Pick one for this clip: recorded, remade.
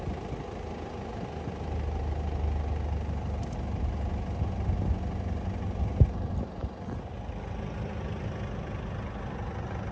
recorded